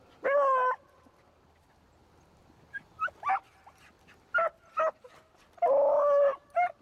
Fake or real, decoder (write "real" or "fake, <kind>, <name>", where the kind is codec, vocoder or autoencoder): real